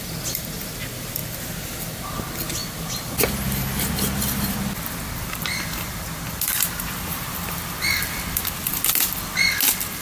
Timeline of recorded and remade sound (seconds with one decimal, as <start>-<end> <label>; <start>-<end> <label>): 0.0-1.2 recorded; 1.2-1.9 remade; 1.9-10.0 recorded